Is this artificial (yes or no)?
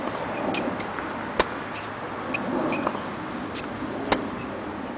no